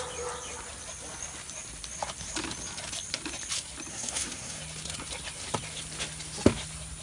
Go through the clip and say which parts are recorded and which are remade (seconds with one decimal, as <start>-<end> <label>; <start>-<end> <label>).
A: 0.0-3.9 recorded; 3.9-4.6 remade; 4.6-7.0 recorded